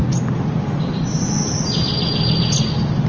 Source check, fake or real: real